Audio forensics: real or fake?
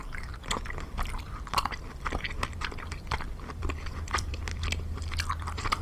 fake